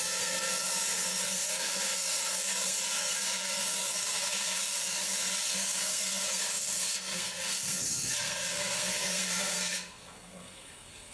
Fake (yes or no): yes